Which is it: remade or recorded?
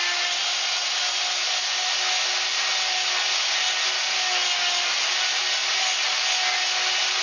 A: recorded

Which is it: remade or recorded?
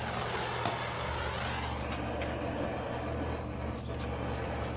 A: recorded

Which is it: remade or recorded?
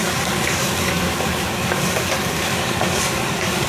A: remade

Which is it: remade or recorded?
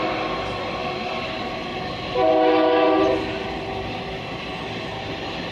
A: recorded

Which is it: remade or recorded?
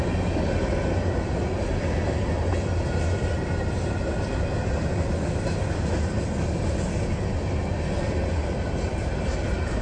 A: recorded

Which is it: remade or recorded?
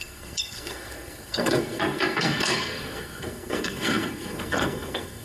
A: remade